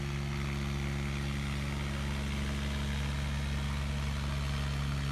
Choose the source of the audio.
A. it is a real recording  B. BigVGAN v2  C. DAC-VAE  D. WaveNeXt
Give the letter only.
A